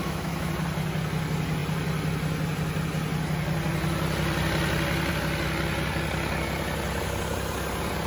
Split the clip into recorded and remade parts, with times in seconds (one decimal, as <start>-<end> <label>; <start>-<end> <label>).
0.0-0.5 remade; 0.5-8.1 recorded

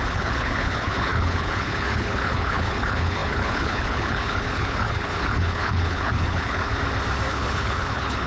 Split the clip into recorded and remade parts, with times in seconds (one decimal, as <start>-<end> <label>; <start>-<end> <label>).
0.0-6.7 remade; 6.7-7.3 recorded; 7.3-8.3 remade

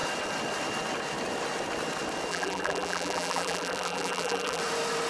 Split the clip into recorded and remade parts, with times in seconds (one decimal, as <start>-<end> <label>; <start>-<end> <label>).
0.0-2.3 recorded; 2.3-4.6 remade; 4.6-5.1 recorded

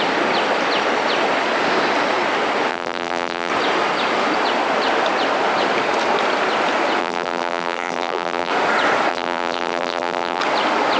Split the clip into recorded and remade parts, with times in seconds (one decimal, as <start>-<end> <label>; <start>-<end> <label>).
0.0-2.7 recorded; 2.7-3.5 remade; 3.5-7.0 recorded; 7.0-8.5 remade; 8.5-9.1 recorded; 9.1-10.4 remade; 10.4-11.0 recorded

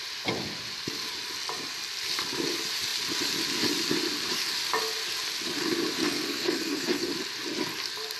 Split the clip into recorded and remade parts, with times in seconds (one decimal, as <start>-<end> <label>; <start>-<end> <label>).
0.0-6.0 recorded; 6.0-7.1 remade; 7.1-8.2 recorded

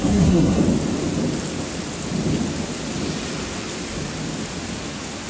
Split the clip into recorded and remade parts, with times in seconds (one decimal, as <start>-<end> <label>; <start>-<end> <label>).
0.0-0.6 remade; 0.6-5.3 recorded